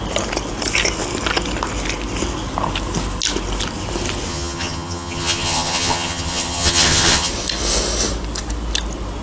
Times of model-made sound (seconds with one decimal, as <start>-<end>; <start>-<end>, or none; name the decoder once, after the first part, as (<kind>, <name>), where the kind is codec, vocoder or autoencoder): 4.3-7.3 (vocoder, HiFi-GAN)